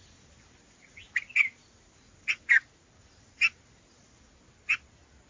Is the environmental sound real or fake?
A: real